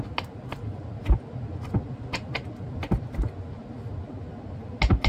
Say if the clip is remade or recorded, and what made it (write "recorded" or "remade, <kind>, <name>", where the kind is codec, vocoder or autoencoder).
recorded